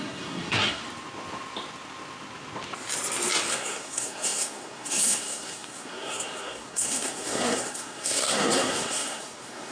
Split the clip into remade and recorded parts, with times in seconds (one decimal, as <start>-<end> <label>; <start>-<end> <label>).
0.0-0.8 remade; 0.8-3.5 recorded; 3.5-9.7 remade